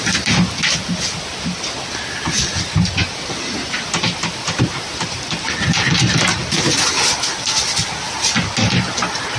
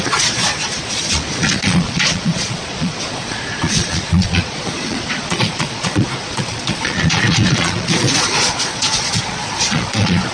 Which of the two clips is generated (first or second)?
second